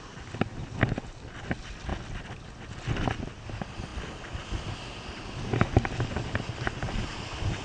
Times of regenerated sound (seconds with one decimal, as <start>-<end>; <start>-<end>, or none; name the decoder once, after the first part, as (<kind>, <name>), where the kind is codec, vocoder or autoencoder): none